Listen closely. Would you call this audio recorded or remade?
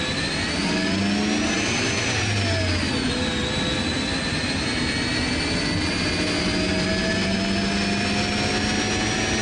recorded